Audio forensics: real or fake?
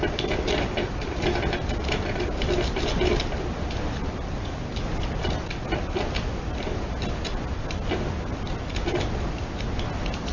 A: real